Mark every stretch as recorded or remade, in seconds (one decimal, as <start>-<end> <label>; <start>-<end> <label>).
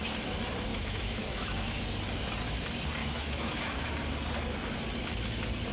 0.0-0.7 recorded; 0.7-1.8 remade; 1.8-3.0 recorded; 3.0-3.9 remade; 3.9-5.7 recorded